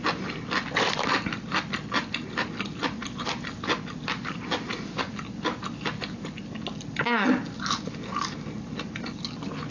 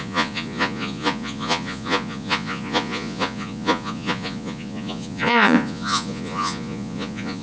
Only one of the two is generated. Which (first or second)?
second